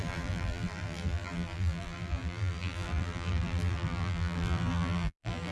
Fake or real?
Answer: fake